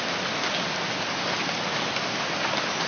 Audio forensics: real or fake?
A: real